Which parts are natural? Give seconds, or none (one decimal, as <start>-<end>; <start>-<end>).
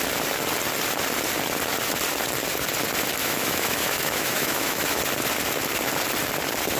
0.0-3.2; 5.0-6.8